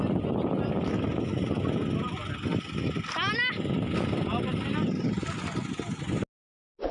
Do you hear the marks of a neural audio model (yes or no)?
no